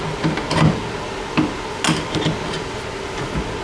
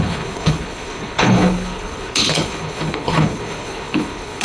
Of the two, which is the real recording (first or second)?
first